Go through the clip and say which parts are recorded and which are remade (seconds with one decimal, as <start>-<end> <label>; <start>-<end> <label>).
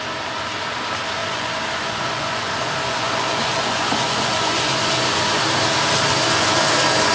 0.0-1.2 recorded; 1.2-5.4 remade; 5.4-6.1 recorded; 6.1-7.1 remade